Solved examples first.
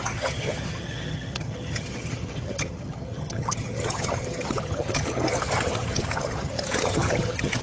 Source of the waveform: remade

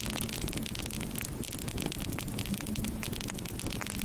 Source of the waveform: recorded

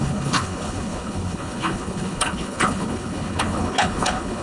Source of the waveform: remade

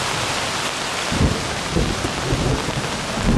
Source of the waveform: recorded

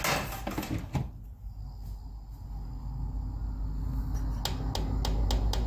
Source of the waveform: recorded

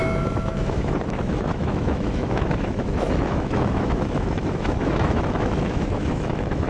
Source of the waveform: remade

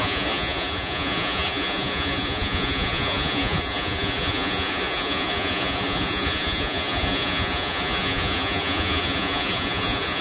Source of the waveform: remade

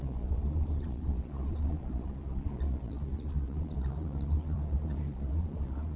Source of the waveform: remade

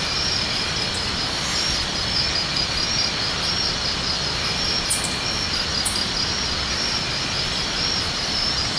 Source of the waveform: recorded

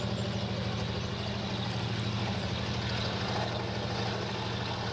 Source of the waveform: recorded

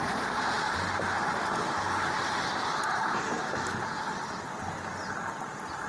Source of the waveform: recorded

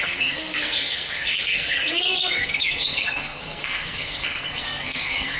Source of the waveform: remade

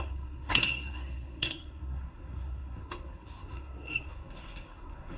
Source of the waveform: remade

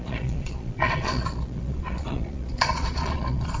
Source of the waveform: remade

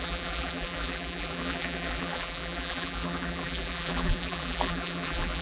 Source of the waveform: remade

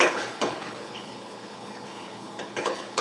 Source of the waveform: remade